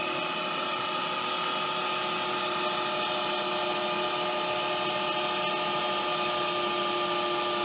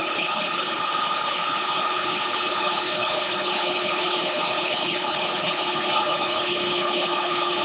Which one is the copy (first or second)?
second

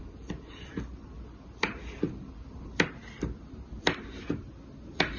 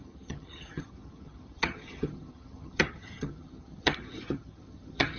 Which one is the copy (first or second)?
second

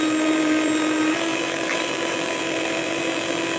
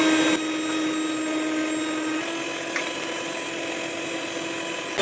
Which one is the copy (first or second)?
first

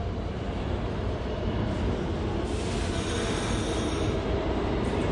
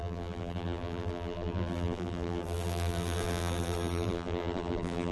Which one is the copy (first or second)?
second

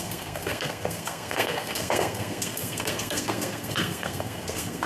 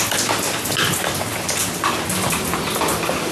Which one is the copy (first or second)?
first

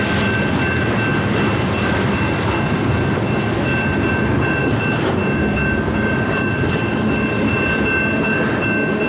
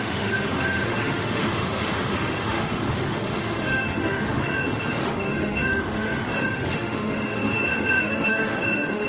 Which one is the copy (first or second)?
second